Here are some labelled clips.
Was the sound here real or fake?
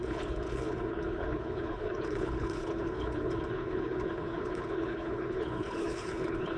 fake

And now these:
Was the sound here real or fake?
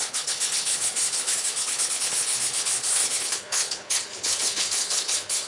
fake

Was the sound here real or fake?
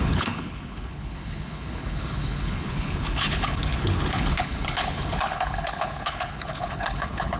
fake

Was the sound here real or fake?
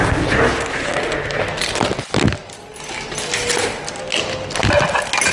real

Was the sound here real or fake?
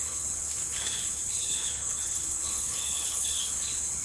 fake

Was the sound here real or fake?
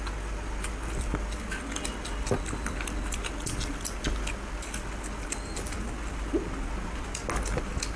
real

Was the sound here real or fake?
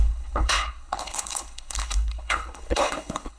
fake